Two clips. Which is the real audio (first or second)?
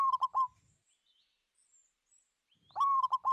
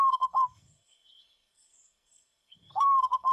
first